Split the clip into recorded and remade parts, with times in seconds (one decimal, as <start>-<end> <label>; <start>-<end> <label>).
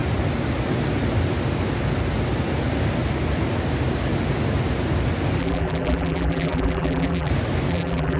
0.0-5.4 recorded; 5.4-7.3 remade; 7.3-7.7 recorded; 7.7-8.2 remade